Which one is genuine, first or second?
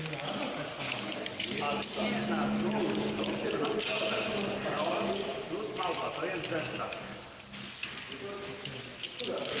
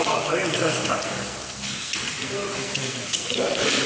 first